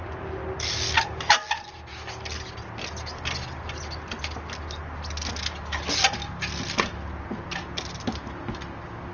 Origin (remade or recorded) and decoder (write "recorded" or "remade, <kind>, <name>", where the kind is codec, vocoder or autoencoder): recorded